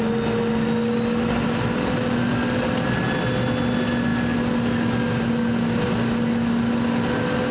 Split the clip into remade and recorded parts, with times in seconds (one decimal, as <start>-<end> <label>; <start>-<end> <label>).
0.0-7.5 recorded